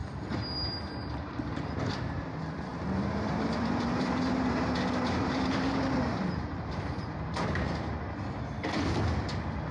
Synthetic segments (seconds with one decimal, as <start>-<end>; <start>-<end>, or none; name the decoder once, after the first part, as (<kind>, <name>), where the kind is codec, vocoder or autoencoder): 2.7-7.9 (vocoder, BigVGAN v2)

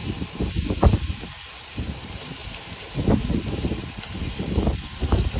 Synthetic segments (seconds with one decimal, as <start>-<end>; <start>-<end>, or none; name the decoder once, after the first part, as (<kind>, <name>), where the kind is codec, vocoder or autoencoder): 0.0-5.4 (vocoder, BigVGAN v2)